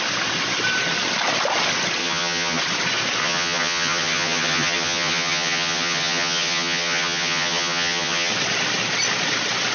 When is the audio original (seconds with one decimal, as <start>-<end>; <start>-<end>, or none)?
0.0-2.0; 2.6-3.2; 8.3-9.7